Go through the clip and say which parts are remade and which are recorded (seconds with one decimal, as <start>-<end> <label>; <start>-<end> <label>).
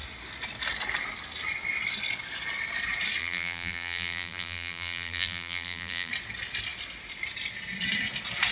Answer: 0.0-3.2 recorded; 3.2-6.1 remade; 6.1-8.5 recorded